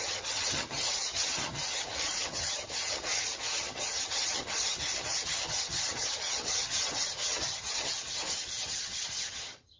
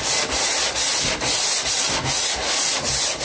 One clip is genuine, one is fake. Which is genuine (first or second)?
second